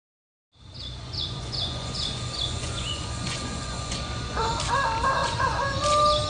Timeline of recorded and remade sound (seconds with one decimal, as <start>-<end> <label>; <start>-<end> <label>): 0.0-0.8 recorded; 0.8-4.5 remade; 4.5-5.2 recorded; 5.2-5.8 remade; 5.8-6.3 recorded